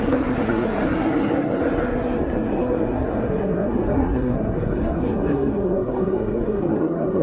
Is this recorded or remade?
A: remade